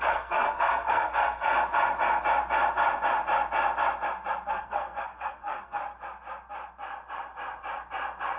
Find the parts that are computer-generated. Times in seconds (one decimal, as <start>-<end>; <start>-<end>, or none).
0.0-1.5; 4.5-5.8